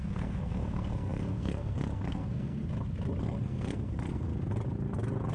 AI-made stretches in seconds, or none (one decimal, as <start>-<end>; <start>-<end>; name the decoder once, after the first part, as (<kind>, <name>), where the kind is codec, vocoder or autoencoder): 0.0-2.6 (codec, SNAC); 3.2-4.3